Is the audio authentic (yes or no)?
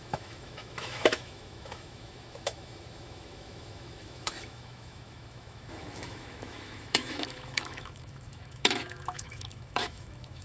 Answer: no